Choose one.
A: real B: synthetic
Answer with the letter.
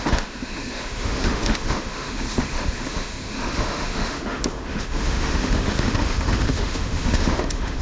B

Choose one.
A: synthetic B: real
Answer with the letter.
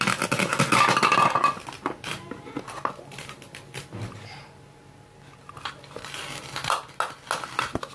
B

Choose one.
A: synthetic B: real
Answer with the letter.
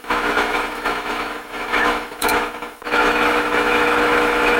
A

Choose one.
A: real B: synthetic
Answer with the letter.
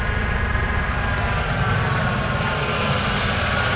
A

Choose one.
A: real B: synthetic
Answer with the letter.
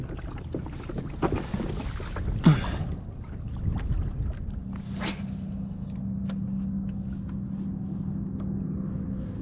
A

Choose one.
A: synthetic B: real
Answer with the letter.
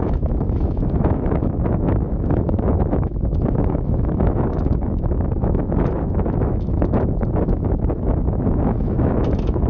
A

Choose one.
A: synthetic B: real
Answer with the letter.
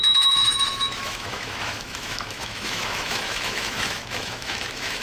A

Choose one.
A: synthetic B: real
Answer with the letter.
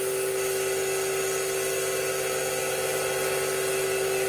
B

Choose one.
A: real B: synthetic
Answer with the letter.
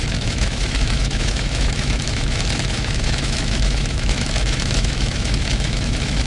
B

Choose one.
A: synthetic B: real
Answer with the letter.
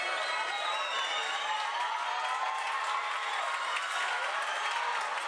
B